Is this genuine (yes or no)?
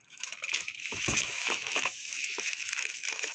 no